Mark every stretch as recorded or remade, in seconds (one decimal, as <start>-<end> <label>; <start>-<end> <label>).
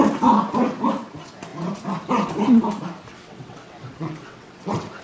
0.0-3.1 recorded; 3.1-5.0 remade